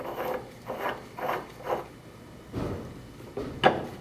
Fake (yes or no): no